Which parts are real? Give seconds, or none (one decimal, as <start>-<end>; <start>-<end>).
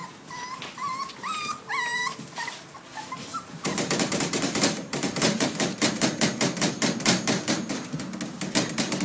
0.0-3.3; 7.7-9.0